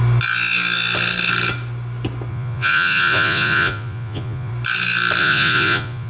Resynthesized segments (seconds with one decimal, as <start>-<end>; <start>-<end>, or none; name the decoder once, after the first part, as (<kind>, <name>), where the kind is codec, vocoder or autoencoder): 2.3-4.5 (vocoder, Vocos); 5.2-6.1